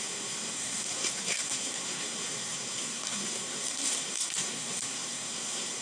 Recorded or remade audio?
remade